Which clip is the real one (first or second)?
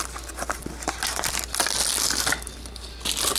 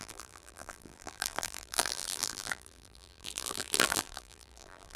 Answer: first